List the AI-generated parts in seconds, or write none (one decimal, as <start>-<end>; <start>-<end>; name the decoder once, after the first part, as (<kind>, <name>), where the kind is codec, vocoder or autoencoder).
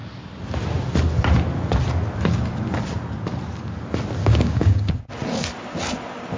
4.2-4.9 (codec, DAC)